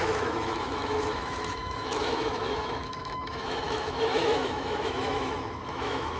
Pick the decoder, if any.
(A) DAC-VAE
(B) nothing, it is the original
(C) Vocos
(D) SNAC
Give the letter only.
A